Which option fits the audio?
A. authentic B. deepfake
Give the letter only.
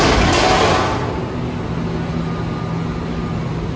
A